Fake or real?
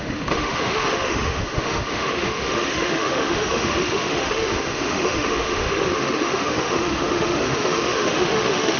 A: fake